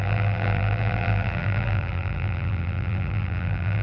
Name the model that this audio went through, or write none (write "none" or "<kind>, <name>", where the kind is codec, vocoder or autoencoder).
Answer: vocoder, BigVGAN v2